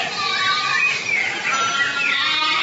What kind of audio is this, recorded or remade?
recorded